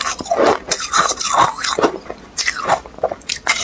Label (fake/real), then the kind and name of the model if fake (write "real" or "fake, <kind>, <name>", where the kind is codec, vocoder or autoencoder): real